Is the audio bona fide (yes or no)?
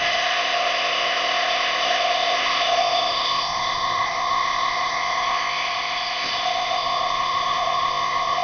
no